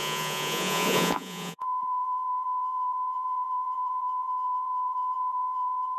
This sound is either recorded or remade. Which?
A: remade